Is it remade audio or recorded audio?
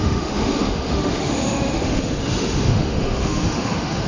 remade